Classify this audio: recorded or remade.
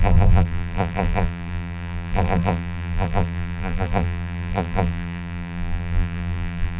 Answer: remade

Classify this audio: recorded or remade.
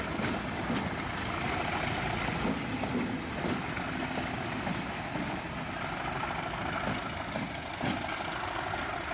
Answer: recorded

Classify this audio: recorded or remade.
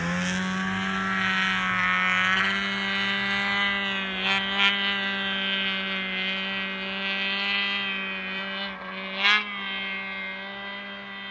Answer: recorded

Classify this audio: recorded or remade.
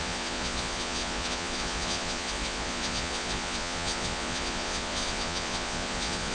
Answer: remade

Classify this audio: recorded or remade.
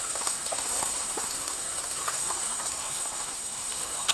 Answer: remade